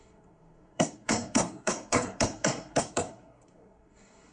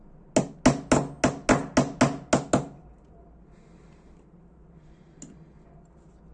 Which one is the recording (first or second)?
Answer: second